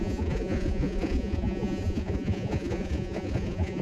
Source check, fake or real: fake